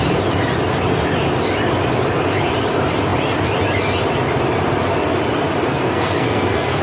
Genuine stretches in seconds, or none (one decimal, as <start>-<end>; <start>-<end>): 0.0-5.7